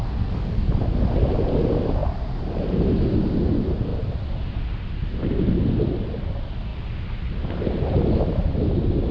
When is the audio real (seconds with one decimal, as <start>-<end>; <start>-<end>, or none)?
0.7-9.1